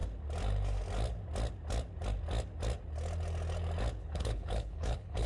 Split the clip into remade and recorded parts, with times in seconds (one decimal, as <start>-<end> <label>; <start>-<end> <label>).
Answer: 0.0-4.0 recorded; 4.0-5.3 remade